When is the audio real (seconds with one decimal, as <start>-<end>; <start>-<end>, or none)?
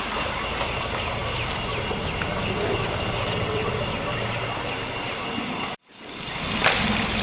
0.0-3.2; 3.7-7.2